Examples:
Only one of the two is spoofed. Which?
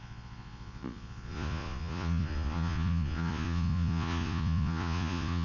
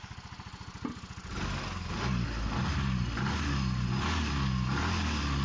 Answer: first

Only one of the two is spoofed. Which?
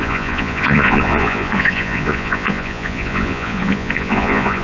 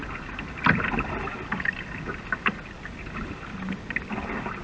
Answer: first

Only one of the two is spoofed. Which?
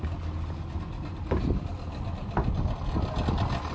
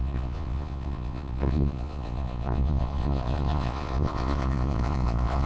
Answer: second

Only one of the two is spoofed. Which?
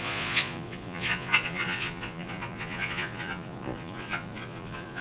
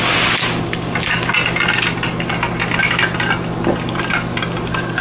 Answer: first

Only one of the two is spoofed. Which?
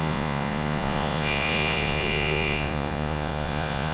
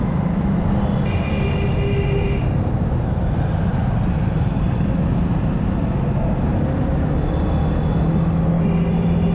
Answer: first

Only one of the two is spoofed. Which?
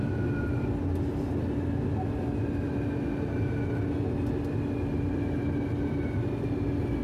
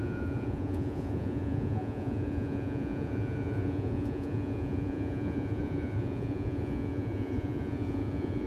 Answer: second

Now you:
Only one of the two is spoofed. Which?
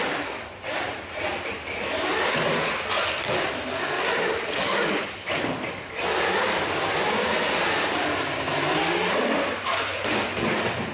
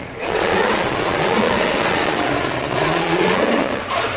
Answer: second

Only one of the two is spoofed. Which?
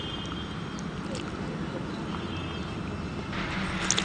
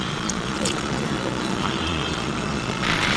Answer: second